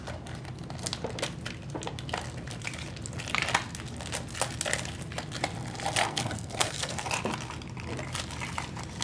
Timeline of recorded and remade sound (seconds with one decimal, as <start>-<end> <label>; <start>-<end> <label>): 0.0-6.0 recorded; 6.0-7.1 remade; 7.1-9.0 recorded